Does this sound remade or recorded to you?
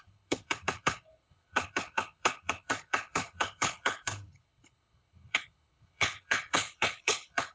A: remade